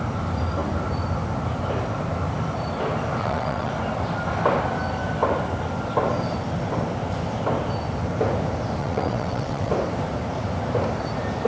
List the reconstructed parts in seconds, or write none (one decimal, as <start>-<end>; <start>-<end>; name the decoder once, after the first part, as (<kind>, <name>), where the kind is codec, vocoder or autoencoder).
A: 3.2-3.7 (vocoder, WaveNeXt); 8.8-9.7